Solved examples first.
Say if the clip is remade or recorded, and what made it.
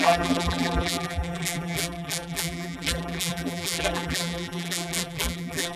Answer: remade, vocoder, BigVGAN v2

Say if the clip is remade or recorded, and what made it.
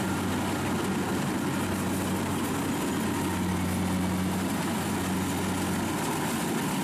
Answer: recorded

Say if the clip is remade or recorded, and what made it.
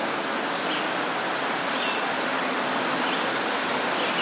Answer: recorded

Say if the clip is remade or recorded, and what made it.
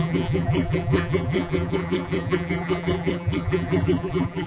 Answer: remade, vocoder, BigVGAN v2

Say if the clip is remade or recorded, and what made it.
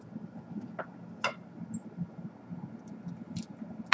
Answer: recorded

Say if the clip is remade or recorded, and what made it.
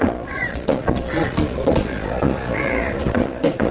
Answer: remade, vocoder, Vocos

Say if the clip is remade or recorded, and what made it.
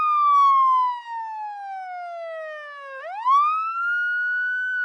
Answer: recorded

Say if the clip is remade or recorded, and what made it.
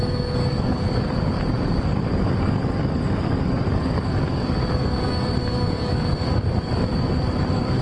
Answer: remade, codec, DAC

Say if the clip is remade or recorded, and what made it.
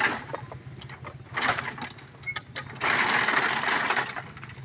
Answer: recorded